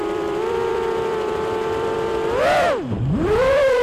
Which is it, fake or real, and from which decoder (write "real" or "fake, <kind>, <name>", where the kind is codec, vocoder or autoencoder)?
fake, vocoder, BigVGAN v2